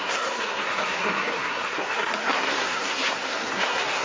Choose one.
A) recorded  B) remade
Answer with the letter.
B